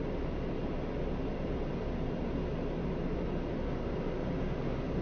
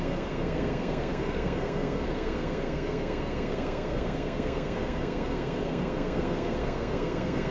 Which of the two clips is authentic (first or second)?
first